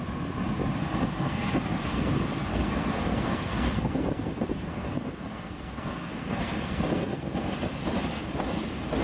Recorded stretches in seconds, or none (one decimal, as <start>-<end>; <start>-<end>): 0.0-0.8; 2.1-2.5; 7.5-9.0